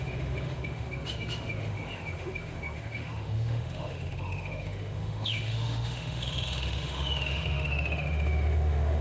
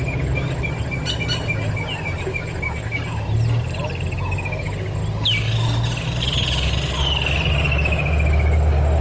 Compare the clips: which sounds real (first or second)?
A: second